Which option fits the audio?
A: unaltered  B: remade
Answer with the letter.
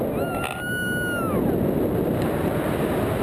A